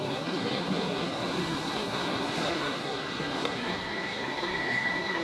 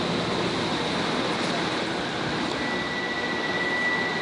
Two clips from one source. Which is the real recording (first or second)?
second